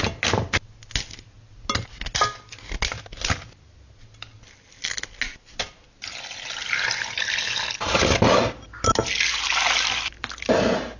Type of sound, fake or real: real